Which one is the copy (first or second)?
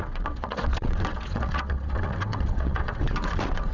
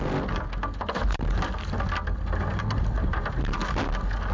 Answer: first